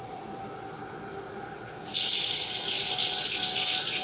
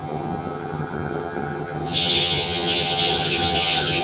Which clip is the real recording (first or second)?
first